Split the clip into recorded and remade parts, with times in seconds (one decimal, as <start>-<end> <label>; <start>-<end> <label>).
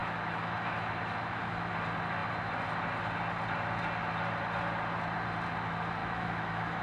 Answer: 0.0-1.7 remade; 1.7-6.0 recorded; 6.0-6.8 remade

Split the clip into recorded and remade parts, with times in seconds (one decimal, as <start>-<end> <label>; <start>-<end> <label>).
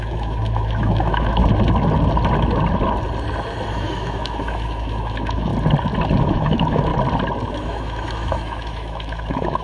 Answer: 0.0-1.4 remade; 1.4-3.7 recorded; 3.7-5.5 remade; 5.5-6.2 recorded; 6.2-6.9 remade; 6.9-7.5 recorded; 7.5-9.6 remade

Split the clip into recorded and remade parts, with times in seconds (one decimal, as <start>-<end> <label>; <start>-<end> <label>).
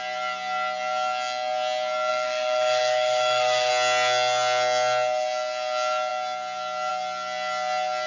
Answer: 0.0-2.1 recorded; 2.1-3.7 remade; 3.7-8.1 recorded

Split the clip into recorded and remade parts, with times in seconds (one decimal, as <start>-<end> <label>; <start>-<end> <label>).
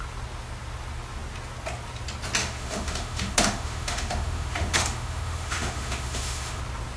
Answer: 0.0-2.4 recorded; 2.4-6.6 remade; 6.6-7.0 recorded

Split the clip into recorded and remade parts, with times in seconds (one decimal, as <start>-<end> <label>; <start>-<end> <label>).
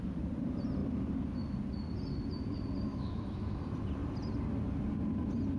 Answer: 0.0-2.9 recorded; 2.9-3.6 remade; 3.6-5.6 recorded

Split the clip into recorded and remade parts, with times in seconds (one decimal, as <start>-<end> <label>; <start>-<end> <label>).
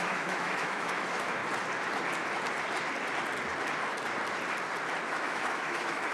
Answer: 0.0-1.4 remade; 1.4-5.1 recorded; 5.1-6.1 remade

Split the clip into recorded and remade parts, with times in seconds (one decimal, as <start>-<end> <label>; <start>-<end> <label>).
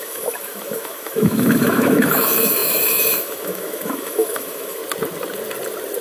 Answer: 0.0-4.8 remade; 4.8-6.0 recorded